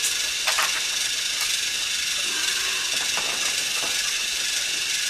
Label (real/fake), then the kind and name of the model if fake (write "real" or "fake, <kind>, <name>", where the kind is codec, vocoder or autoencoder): real